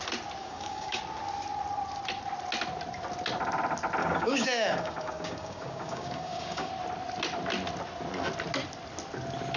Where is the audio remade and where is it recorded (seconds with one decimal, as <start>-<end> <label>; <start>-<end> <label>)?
0.0-0.4 recorded; 0.4-1.0 remade; 1.0-4.0 recorded; 4.0-6.7 remade; 6.7-9.6 recorded